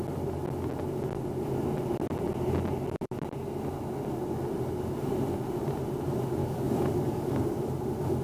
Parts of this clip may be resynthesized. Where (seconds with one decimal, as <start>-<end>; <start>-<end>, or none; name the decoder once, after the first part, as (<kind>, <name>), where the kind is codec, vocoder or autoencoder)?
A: 6.4-7.6 (codec, DAC)